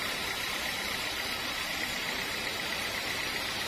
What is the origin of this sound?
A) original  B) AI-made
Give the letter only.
B